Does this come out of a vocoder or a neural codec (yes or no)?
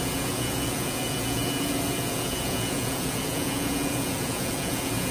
yes